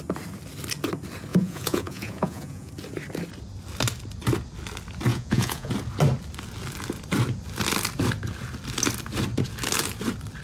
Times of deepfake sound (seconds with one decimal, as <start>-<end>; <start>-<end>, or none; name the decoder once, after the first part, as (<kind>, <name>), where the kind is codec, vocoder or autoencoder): 1.3-2.7 (vocoder, Vocos); 5.1-5.7